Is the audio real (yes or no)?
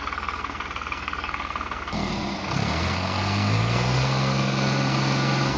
no